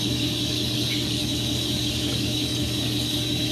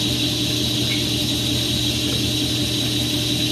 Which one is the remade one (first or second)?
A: first